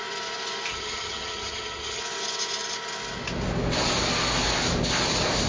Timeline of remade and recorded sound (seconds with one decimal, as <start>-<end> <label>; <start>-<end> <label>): 0.0-0.7 recorded; 0.7-2.0 remade; 2.0-5.5 recorded